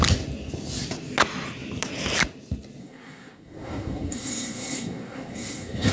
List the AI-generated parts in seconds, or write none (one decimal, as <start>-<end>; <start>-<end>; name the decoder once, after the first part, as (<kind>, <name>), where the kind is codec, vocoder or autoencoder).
2.8-5.9 (codec, SNAC)